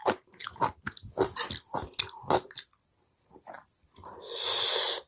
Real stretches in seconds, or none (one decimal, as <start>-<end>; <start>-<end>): 0.4-2.6